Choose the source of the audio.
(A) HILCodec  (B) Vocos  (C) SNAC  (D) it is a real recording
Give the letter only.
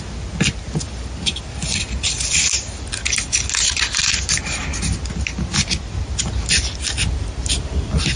D